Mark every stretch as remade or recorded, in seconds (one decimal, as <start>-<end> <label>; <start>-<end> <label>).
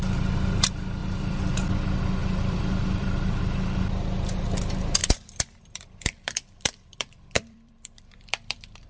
0.0-1.0 recorded; 1.0-1.5 remade; 1.5-2.2 recorded; 2.2-3.4 remade; 3.4-5.0 recorded; 5.0-8.9 remade